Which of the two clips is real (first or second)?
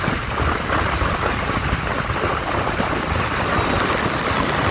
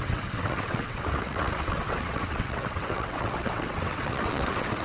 first